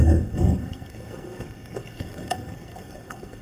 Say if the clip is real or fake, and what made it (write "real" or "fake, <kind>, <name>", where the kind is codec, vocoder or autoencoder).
fake, codec, SNAC